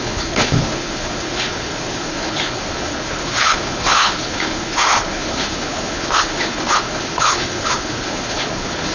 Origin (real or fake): fake